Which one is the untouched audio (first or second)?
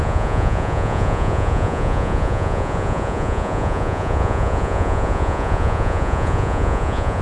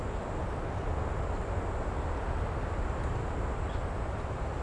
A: second